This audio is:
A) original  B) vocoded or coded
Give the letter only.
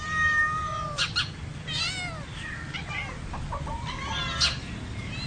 A